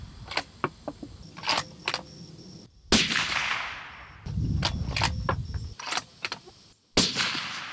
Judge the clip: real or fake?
real